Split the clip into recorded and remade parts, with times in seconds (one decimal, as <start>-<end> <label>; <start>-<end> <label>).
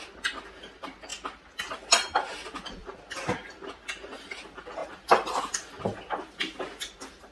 0.0-7.3 recorded